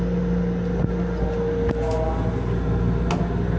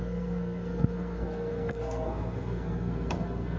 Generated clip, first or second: second